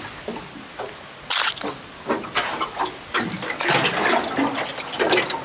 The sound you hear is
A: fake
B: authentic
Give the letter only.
B